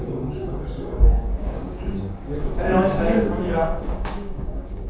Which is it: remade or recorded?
remade